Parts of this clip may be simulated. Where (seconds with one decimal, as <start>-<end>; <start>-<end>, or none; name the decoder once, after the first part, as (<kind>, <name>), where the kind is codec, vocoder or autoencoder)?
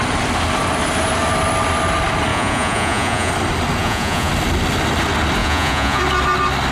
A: 2.3-3.3 (vocoder, Vocos); 3.8-4.3; 5.4-6.0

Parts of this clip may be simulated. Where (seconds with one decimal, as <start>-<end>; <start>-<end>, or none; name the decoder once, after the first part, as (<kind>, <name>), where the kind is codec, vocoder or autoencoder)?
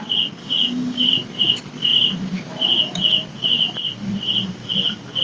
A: 0.4-1.1 (codec, DAC)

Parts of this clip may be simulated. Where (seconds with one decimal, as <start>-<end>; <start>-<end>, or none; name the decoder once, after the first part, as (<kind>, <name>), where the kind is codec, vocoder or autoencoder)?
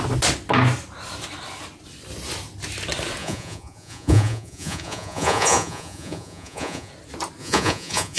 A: 3.2-6.9 (vocoder, Vocos); 7.4-8.2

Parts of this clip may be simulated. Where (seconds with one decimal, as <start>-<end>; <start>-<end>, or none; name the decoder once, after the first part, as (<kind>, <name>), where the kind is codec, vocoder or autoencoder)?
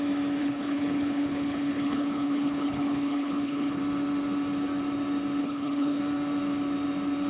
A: 0.4-3.8 (codec, HILCodec); 5.4-6.0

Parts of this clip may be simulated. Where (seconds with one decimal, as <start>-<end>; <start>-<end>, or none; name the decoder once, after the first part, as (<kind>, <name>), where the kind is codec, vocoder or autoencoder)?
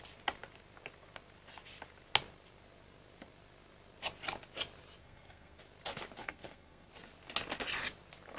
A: 5.0-5.6 (codec, SNAC); 6.2-6.9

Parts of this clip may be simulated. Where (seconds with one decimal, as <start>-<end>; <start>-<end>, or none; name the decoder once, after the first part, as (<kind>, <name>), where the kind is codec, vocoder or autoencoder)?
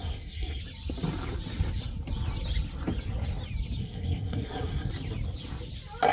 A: 0.0-0.6 (codec, SNAC); 3.8-4.9